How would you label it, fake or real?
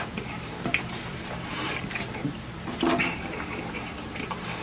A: fake